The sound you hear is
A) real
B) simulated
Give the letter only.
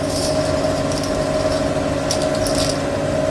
A